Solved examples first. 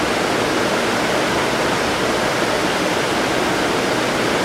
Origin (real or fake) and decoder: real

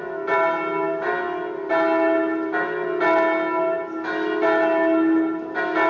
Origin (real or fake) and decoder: real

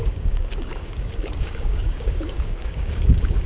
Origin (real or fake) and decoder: fake, codec, DAC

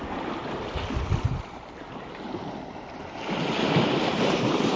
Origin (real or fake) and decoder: real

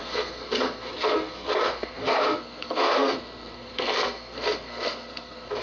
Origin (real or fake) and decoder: fake, codec, SNAC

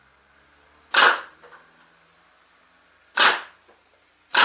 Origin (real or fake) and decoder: real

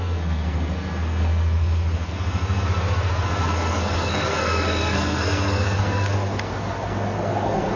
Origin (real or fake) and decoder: fake, codec, SNAC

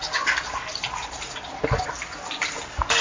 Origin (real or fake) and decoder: real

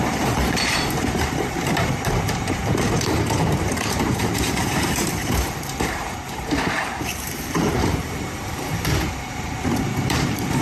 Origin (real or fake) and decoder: fake, vocoder, BigVGAN v2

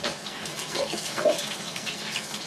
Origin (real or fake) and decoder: fake, codec, SNAC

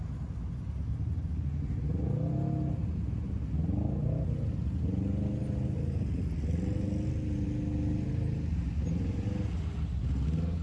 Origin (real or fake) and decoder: real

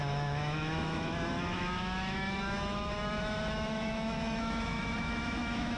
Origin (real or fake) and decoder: fake, autoencoder, DAC-VAE